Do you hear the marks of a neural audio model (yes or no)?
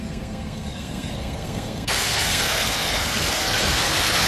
yes